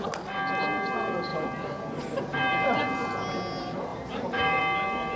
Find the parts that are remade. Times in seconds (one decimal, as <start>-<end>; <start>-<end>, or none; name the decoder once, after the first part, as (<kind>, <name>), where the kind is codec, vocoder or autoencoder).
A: 3.9-4.6 (vocoder, BigVGAN v2)